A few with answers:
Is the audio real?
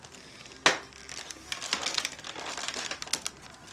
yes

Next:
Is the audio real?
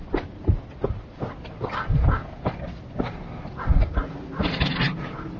yes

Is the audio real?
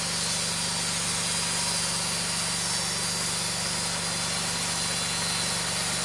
yes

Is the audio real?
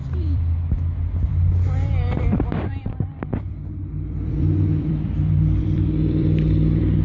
no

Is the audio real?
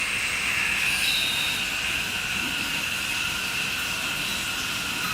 yes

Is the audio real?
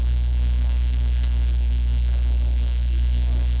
no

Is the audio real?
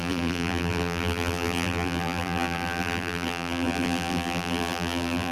no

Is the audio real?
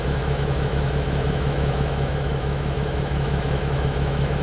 no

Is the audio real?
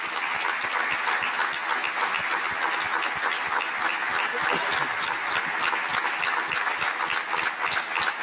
yes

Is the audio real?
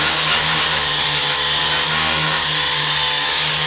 no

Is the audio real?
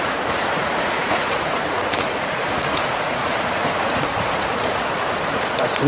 no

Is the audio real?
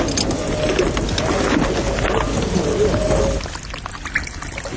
yes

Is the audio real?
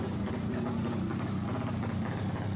yes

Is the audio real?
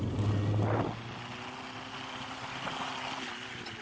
yes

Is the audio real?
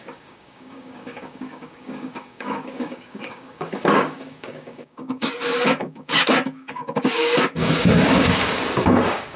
no